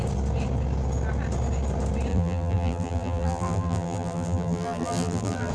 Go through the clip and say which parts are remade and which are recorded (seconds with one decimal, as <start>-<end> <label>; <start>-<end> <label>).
0.0-2.1 recorded; 2.1-5.5 remade